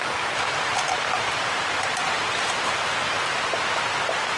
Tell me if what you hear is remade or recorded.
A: remade